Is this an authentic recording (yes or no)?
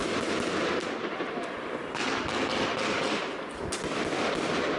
yes